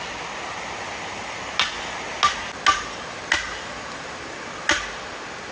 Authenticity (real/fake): real